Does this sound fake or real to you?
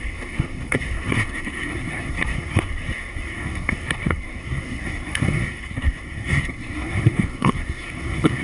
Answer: fake